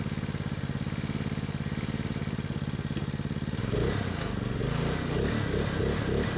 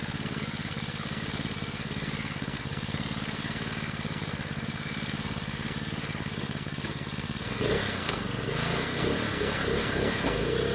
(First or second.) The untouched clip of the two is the first